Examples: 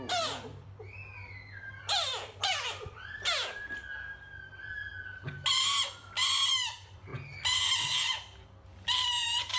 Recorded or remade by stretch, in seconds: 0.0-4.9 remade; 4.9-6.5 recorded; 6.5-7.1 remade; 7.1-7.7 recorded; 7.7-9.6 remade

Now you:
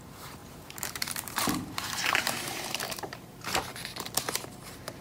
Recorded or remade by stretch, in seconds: 0.0-3.7 remade; 3.7-4.3 recorded; 4.3-5.0 remade

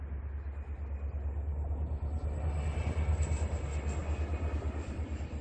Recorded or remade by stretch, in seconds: 0.0-4.0 recorded; 4.0-5.0 remade; 5.0-5.4 recorded

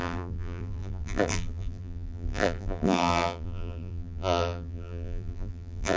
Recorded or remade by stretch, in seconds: 0.0-6.0 remade